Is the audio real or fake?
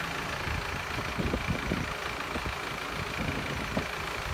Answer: real